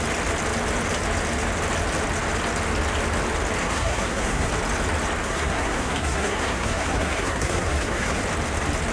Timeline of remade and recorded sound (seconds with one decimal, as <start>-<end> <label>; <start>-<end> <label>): 0.0-3.6 recorded; 3.6-4.5 remade; 4.5-5.2 recorded; 5.2-8.2 remade; 8.2-8.9 recorded